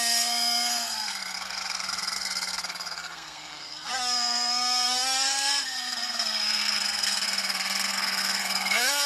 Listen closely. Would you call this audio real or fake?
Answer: fake